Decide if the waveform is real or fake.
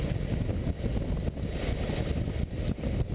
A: real